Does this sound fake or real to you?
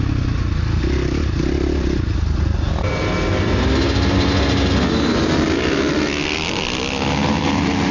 real